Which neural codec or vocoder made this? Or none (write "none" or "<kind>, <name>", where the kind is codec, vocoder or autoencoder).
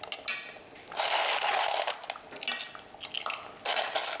none